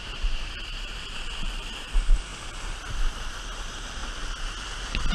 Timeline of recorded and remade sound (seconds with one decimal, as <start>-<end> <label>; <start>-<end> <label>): 0.0-2.3 remade; 2.3-3.1 recorded; 3.1-4.0 remade; 4.0-5.1 recorded